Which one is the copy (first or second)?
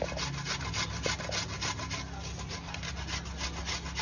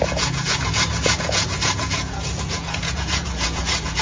second